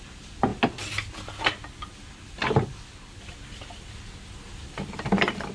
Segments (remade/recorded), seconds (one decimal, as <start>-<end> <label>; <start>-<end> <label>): 0.0-5.5 recorded